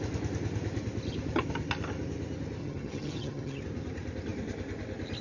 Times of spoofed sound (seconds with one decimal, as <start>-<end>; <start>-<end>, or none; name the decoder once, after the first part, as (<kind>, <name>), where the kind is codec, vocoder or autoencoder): 2.6-3.6 (vocoder, HiFi-GAN)